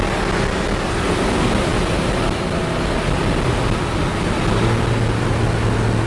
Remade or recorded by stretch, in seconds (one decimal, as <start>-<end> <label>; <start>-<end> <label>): 0.0-6.1 recorded